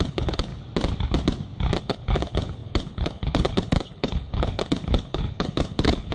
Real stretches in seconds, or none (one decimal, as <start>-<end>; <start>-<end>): 0.5-1.8